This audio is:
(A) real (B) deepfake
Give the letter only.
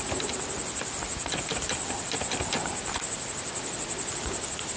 A